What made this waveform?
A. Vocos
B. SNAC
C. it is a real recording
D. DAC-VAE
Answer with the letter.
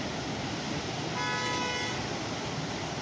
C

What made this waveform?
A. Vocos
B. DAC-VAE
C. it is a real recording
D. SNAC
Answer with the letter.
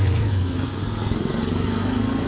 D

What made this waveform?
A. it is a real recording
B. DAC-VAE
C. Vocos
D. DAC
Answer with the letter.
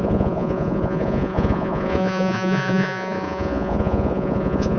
C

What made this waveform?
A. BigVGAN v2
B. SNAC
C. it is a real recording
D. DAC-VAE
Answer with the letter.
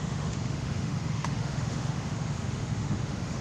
D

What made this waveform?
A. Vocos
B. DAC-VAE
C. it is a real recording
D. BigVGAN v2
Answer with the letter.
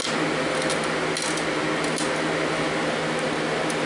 C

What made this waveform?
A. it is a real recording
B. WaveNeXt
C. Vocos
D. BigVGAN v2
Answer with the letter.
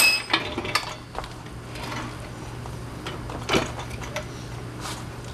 A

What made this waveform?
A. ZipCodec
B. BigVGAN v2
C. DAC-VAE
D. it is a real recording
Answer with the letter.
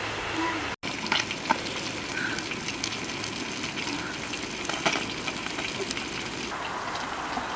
D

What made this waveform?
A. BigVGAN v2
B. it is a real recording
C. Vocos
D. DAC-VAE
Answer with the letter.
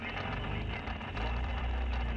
A